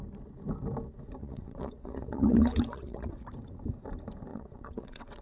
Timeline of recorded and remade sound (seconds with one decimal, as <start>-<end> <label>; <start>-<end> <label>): 0.0-1.2 recorded; 1.2-3.2 remade; 3.2-4.3 recorded; 4.3-5.2 remade